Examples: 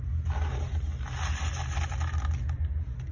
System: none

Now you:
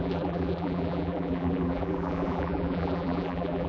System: vocoder, BigVGAN v2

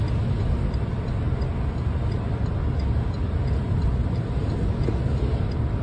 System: none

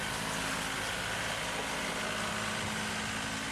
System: none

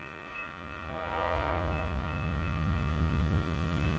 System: vocoder, Vocos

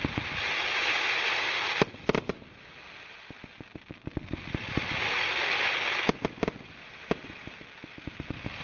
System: none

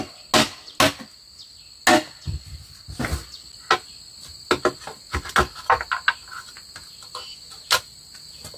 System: none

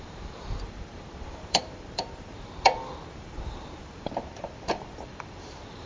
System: vocoder, BigVGAN v2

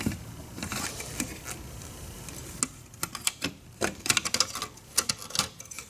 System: none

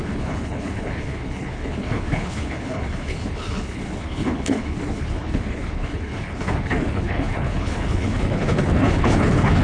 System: codec, HILCodec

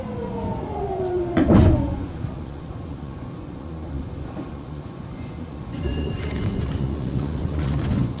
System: vocoder, Vocos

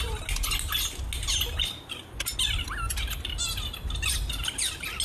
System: none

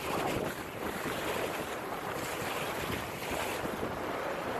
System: none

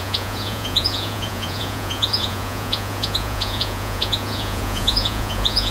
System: vocoder, Vocos